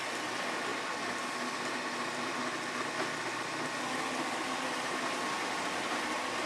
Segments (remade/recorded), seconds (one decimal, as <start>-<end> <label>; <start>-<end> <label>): 0.0-6.5 recorded

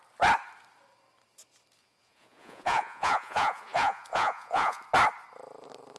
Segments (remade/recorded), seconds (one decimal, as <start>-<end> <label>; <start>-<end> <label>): 0.0-1.8 recorded; 1.8-4.8 remade; 4.8-6.0 recorded

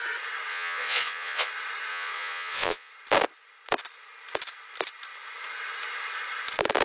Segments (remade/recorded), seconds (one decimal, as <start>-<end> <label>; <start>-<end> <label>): 0.0-0.5 recorded; 0.5-1.5 remade; 1.5-1.9 recorded; 1.9-2.9 remade; 2.9-6.8 recorded

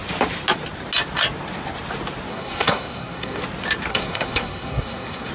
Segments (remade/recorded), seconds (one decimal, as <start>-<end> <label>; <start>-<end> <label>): 0.0-2.3 recorded; 2.3-3.4 remade; 3.4-3.9 recorded; 3.9-5.3 remade

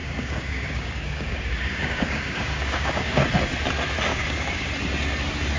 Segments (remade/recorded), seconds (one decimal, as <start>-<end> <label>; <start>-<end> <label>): 0.0-3.3 remade; 3.3-4.1 recorded; 4.1-4.7 remade; 4.7-5.6 recorded